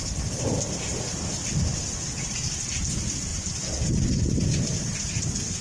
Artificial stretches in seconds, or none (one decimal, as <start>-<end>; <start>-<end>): 0.0-5.6